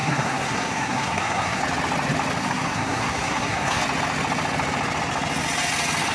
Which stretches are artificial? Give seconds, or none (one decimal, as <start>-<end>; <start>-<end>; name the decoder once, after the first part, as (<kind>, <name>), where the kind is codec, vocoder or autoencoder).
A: 0.0-1.6 (codec, SNAC); 2.4-3.8